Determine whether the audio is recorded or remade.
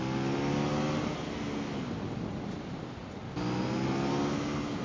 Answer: recorded